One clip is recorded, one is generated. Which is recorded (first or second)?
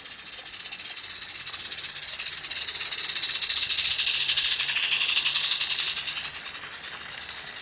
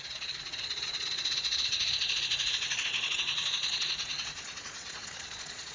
first